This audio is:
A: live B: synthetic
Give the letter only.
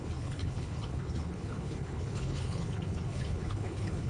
B